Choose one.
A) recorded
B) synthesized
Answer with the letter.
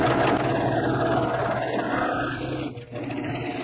A